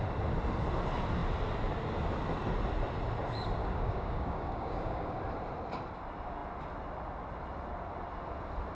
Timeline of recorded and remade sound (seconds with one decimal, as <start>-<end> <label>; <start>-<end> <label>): 0.0-3.6 recorded; 3.6-5.2 remade; 5.2-8.7 recorded